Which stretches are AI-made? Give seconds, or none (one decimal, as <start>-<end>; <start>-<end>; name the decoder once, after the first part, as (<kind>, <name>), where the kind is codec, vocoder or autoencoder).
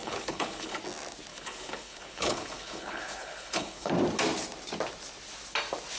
0.0-0.8 (codec, HILCodec); 1.3-3.9